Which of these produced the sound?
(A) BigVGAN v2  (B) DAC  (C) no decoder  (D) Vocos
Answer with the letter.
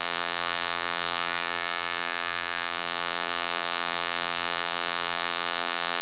A